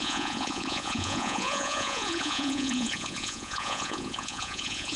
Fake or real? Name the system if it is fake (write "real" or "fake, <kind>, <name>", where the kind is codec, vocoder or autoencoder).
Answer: fake, vocoder, Vocos